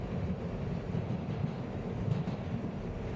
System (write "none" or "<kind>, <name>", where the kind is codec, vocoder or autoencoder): none